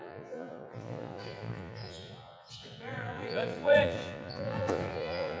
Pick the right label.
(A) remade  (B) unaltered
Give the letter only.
A